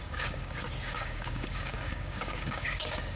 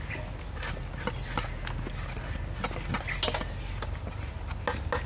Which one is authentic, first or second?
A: second